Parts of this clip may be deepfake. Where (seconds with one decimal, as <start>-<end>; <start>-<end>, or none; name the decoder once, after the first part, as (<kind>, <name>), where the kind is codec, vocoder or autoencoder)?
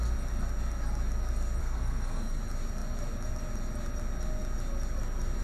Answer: 1.6-2.4 (codec, SNAC)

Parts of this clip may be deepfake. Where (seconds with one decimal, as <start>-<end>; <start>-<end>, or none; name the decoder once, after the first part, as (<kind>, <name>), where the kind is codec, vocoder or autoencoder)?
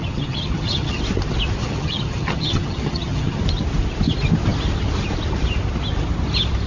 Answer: 0.0-1.0 (vocoder, HiFi-GAN); 1.6-3.4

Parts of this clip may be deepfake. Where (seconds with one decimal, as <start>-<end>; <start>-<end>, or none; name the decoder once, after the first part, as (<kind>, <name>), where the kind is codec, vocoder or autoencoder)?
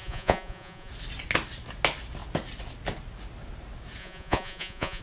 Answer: 0.0-0.9 (vocoder, Vocos); 4.0-5.0